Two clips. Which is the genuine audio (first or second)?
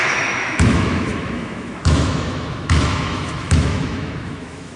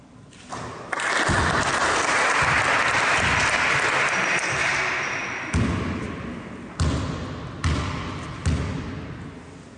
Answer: second